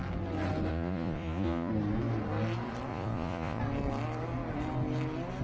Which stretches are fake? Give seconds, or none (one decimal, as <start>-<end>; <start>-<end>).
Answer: 0.7-1.7; 2.9-3.6